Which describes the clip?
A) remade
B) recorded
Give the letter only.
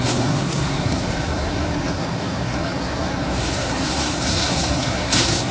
A